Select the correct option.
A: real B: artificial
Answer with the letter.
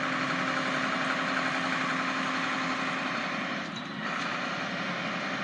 A